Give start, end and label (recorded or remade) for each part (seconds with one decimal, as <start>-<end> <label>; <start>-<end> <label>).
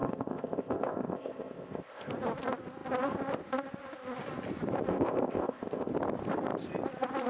0.0-2.1 remade; 2.1-4.9 recorded; 4.9-5.9 remade; 5.9-7.3 recorded